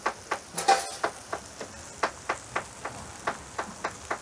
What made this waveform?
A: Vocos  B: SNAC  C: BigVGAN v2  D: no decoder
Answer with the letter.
D